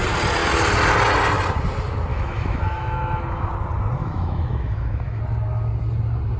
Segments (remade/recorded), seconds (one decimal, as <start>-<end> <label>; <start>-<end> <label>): 0.0-2.1 recorded; 2.1-3.5 remade; 3.5-4.0 recorded; 4.0-5.2 remade; 5.2-6.4 recorded